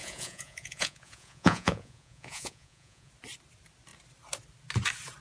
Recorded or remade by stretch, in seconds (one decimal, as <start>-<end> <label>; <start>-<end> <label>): 0.0-3.1 remade; 3.1-5.2 recorded